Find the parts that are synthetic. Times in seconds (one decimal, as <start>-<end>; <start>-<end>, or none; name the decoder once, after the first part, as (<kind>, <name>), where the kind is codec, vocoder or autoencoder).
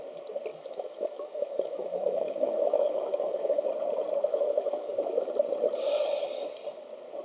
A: 0.5-3.7 (autoencoder, DAC-VAE); 4.3-5.3